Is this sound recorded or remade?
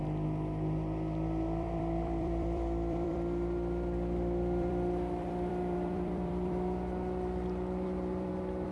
remade